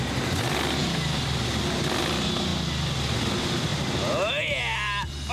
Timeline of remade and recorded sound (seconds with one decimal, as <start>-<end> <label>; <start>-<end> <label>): 0.0-5.3 recorded